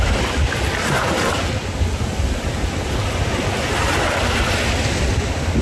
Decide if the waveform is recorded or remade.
remade